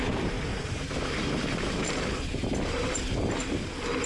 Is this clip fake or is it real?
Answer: real